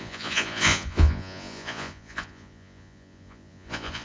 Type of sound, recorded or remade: remade